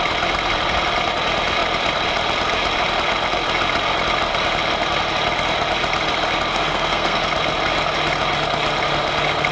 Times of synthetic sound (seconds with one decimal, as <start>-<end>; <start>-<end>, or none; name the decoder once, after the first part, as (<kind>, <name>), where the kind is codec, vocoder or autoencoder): 6.5-7.2 (codec, SNAC)